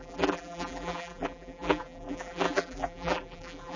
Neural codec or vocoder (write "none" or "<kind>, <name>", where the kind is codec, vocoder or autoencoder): vocoder, BigVGAN v2